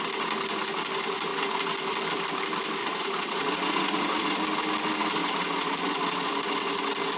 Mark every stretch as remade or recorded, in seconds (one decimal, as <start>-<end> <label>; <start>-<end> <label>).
0.0-2.8 recorded; 2.8-4.4 remade; 4.4-5.2 recorded; 5.2-6.3 remade; 6.3-7.2 recorded